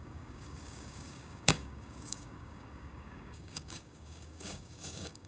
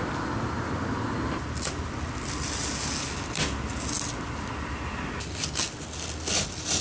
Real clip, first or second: second